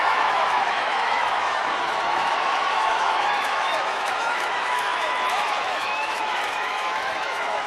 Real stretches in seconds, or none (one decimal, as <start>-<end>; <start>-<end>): none